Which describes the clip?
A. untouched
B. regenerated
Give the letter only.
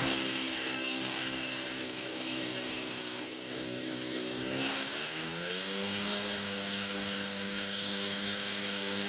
B